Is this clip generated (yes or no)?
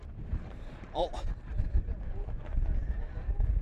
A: yes